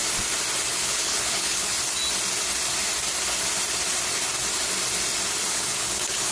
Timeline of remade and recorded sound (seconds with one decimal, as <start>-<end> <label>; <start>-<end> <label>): 0.0-0.7 recorded; 0.7-1.7 remade; 1.7-5.5 recorded; 5.5-6.3 remade